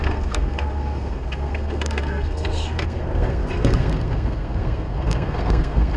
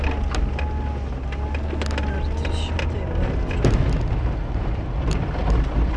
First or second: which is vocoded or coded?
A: first